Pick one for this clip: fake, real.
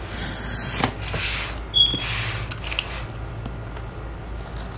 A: real